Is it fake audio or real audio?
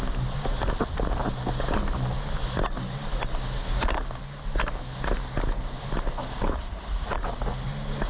real